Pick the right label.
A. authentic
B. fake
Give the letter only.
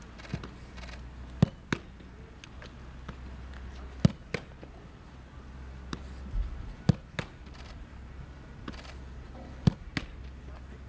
A